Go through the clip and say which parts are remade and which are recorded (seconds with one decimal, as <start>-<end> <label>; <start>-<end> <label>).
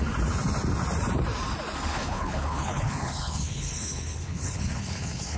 0.0-1.9 recorded; 1.9-5.4 remade